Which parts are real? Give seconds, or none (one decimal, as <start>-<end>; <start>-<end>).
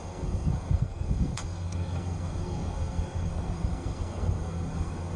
none